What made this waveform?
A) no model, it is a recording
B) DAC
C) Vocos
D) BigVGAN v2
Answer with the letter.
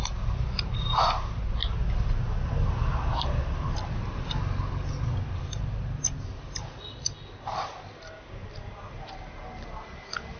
A